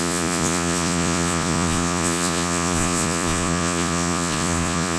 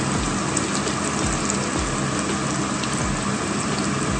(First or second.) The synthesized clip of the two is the first